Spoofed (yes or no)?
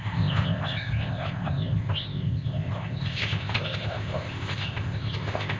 yes